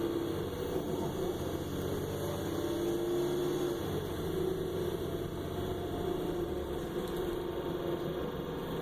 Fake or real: real